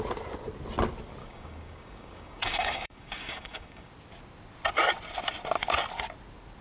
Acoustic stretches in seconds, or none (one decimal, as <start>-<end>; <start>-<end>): 0.0-1.2; 3.9-6.6